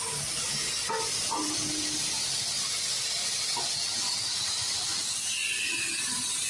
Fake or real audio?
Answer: real